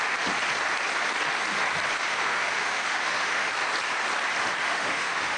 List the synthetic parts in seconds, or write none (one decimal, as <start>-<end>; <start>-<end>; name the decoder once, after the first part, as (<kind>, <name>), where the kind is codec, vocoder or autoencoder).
2.1-3.5 (autoencoder, DAC-VAE); 4.6-5.4